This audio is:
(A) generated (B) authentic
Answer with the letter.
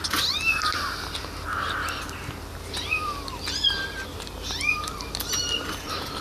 B